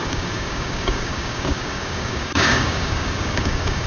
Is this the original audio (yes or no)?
no